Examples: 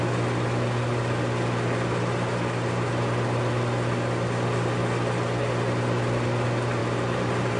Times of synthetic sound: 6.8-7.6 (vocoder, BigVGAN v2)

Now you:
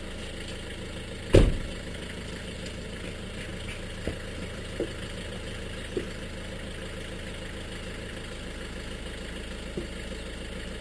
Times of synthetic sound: 3.5-8.6 (vocoder, BigVGAN v2)

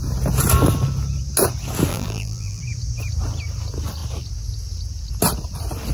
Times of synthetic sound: 1.9-2.6 (vocoder, BigVGAN v2)